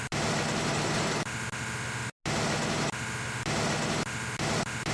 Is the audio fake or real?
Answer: real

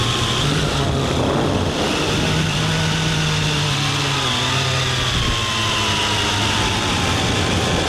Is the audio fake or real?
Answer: real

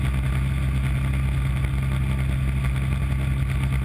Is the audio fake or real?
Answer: real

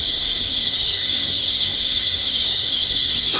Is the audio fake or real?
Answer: fake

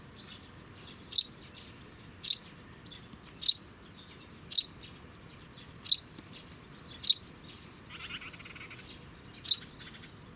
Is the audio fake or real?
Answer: real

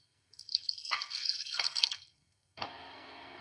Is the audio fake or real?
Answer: fake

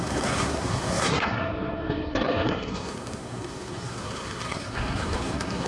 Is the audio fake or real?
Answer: fake